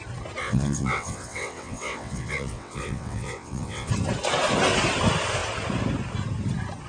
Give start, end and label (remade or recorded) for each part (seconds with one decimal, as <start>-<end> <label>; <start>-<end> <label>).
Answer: 0.0-0.4 recorded; 0.4-3.9 remade; 3.9-6.9 recorded